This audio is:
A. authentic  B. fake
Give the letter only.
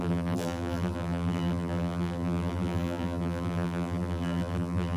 B